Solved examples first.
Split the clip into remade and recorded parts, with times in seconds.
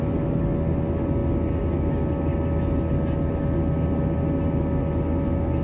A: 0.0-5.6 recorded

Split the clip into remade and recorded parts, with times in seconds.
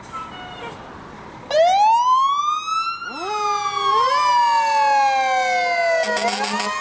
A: 0.0-6.8 recorded